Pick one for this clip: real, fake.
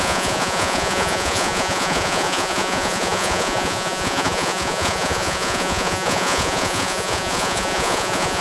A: fake